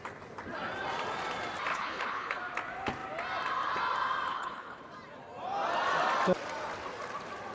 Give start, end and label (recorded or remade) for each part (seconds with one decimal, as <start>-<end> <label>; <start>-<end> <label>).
0.0-1.7 recorded; 1.7-2.4 remade; 2.4-4.3 recorded; 4.3-4.8 remade; 4.8-7.5 recorded